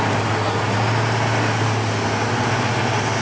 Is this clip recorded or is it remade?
recorded